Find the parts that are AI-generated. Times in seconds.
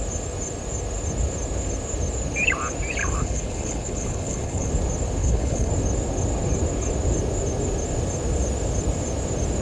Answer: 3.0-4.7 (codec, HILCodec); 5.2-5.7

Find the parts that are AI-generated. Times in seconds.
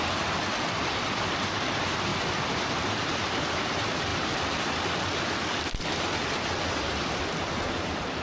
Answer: none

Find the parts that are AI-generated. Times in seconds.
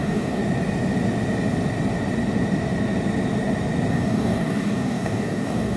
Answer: 0.0-0.4 (codec, DAC); 3.9-5.8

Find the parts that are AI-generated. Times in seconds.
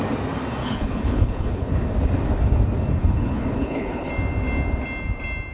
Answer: 0.6-1.7 (codec, HILCodec); 3.0-4.1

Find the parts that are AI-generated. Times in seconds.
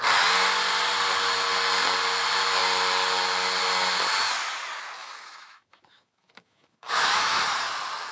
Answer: 5.0-7.4 (autoencoder, DAC-VAE)